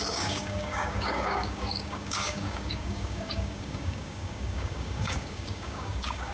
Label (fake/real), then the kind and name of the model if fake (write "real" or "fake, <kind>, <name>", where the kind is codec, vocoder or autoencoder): fake, codec, DAC